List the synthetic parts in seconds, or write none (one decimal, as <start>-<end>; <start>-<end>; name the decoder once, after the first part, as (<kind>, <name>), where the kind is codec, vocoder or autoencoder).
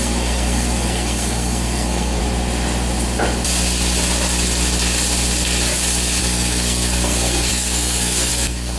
0.0-2.2 (codec, SNAC); 6.2-8.8